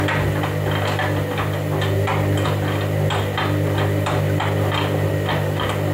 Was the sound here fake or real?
real